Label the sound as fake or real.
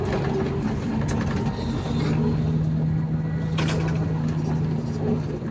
real